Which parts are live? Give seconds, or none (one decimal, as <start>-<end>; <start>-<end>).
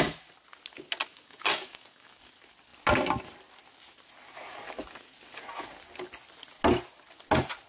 0.0-1.1; 2.3-7.7